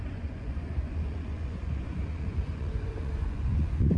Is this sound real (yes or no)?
no